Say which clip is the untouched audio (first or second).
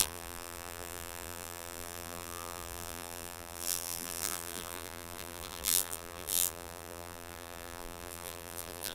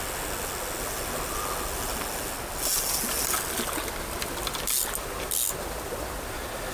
second